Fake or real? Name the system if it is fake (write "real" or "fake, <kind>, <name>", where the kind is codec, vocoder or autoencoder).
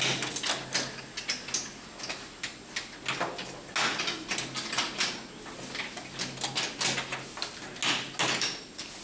real